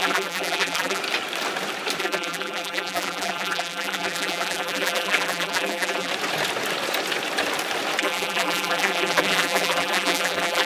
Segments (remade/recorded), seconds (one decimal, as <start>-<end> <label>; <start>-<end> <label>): 0.0-1.0 remade; 1.0-2.0 recorded; 2.0-6.1 remade; 6.1-8.0 recorded; 8.0-10.7 remade